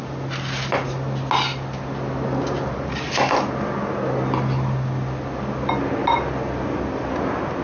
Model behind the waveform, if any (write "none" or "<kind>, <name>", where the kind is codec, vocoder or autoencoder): none